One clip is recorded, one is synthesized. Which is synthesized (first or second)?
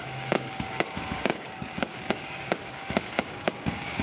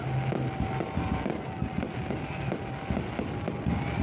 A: first